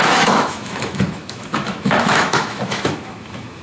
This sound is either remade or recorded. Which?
remade